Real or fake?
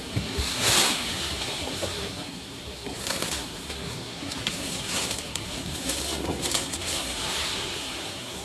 fake